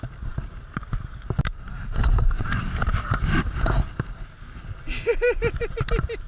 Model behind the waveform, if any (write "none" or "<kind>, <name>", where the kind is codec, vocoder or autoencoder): none